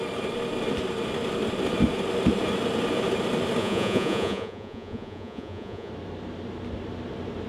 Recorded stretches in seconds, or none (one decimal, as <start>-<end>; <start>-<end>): 0.0-3.6; 5.9-7.5